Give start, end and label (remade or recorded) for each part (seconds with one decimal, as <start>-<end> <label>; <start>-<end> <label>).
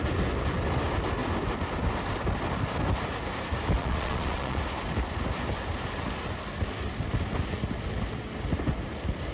0.0-3.8 recorded; 3.8-4.6 remade; 4.6-9.3 recorded